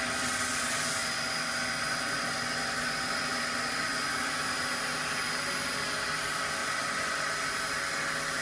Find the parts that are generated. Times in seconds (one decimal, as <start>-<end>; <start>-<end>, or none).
1.0-4.3; 6.6-7.3